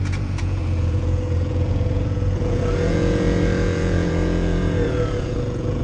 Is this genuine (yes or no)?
no